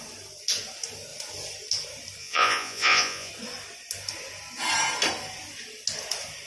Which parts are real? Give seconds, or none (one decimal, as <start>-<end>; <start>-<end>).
0.0-2.2; 3.3-6.5